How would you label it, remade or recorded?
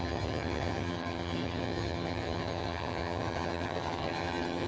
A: remade